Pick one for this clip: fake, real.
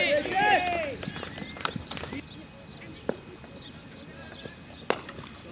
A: real